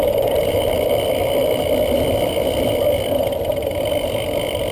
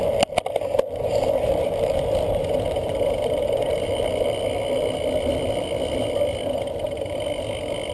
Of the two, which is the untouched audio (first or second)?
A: second